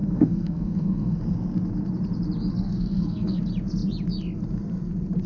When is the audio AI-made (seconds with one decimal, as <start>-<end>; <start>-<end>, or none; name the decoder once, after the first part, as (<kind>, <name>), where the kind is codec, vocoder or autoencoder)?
0.0-1.2 (codec, SNAC); 2.5-3.4